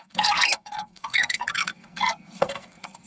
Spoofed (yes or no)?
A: yes